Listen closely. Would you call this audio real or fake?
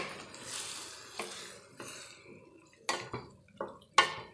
real